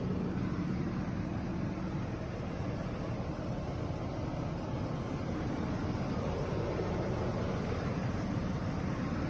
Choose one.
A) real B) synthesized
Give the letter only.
A